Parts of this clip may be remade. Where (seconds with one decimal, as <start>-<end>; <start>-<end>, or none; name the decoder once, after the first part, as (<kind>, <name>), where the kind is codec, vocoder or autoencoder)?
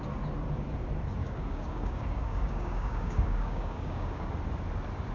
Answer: 1.2-4.3 (codec, DAC)